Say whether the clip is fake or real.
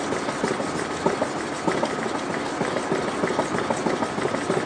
real